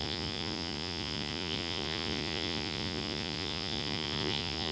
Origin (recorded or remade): remade